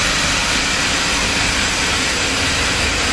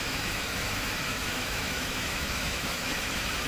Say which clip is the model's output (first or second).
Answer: second